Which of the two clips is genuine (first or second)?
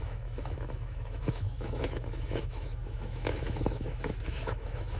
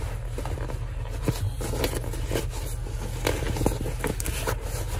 second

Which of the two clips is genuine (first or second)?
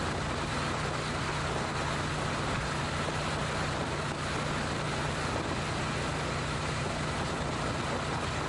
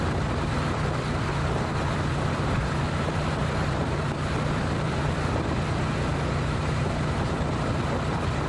first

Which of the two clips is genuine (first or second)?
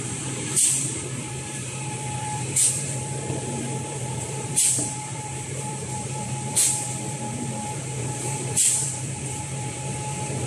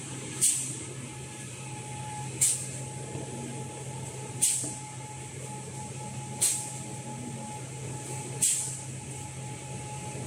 second